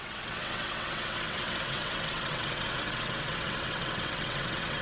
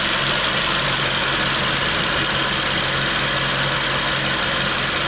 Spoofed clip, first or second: first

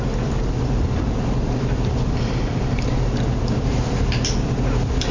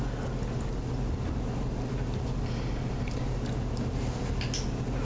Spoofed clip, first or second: first